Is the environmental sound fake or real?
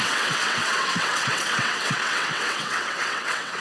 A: fake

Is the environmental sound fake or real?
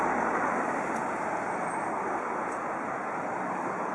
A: real